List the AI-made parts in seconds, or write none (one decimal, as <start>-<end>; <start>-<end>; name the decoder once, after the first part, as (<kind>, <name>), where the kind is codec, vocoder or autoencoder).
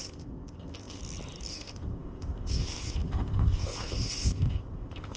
0.0-1.0 (codec, ZipCodec); 1.5-5.2